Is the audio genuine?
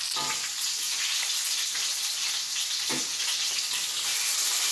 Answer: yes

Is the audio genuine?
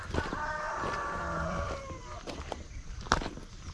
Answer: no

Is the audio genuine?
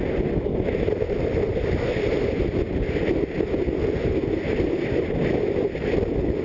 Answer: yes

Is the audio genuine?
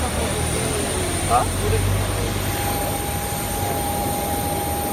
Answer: yes